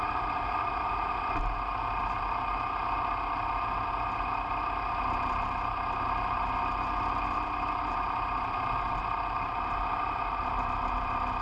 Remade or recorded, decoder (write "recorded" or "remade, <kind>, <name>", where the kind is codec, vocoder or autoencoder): recorded